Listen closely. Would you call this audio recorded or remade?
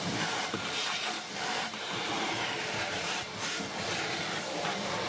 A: remade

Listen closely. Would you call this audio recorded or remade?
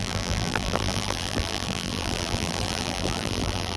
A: remade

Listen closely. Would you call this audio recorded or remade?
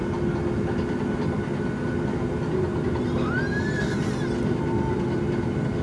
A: recorded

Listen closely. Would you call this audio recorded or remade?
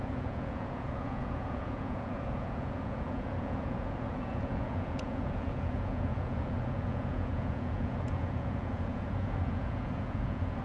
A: remade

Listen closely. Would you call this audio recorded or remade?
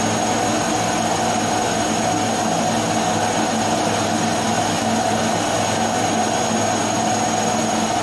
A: recorded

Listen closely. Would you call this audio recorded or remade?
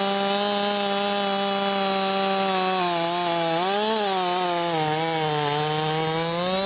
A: recorded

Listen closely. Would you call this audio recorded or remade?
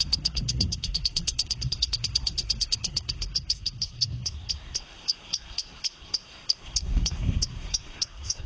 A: remade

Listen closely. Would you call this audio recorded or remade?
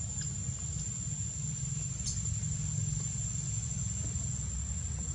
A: recorded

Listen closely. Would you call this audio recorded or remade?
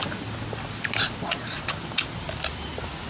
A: recorded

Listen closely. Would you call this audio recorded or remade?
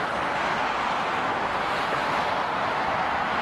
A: recorded